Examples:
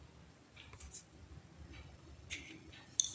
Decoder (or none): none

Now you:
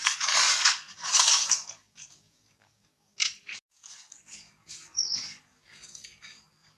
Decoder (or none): codec, DAC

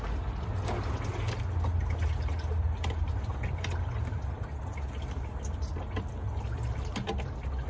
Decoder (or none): none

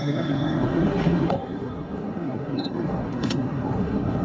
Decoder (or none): codec, SNAC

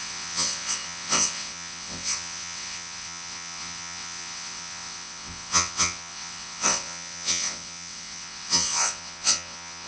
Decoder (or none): vocoder, WaveNeXt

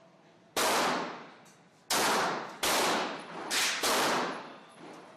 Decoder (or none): none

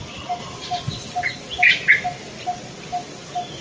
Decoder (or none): none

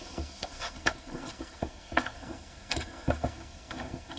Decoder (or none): codec, SNAC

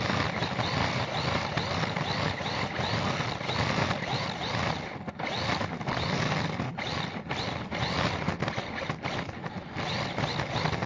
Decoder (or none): none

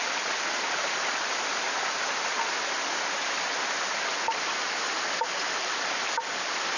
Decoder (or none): none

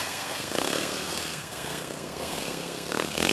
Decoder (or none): codec, SNAC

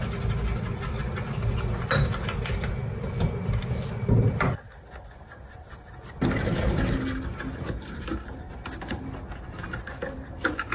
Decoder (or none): none